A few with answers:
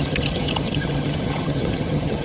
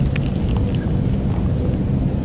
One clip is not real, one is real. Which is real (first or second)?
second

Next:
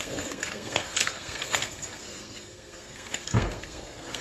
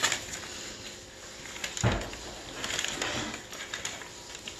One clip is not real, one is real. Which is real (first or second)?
second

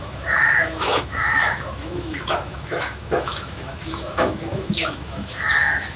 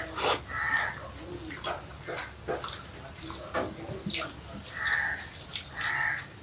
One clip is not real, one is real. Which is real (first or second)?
second